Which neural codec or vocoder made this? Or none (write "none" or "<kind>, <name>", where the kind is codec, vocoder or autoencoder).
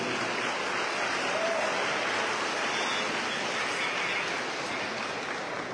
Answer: none